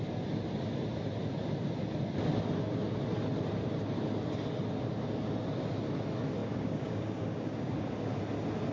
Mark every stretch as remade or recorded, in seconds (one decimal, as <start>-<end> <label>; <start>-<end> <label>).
0.0-6.4 recorded; 6.4-8.2 remade; 8.2-8.7 recorded